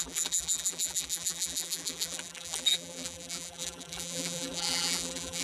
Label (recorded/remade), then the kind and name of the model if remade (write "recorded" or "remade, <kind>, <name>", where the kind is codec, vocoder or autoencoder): remade, vocoder, BigVGAN v2